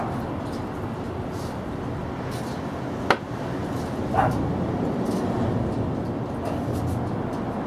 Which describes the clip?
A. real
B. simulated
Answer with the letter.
A